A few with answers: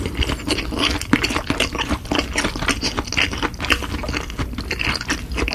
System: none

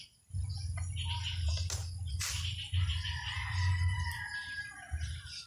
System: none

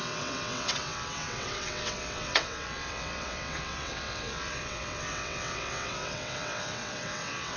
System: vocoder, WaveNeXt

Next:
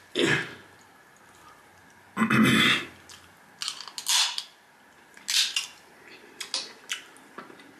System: none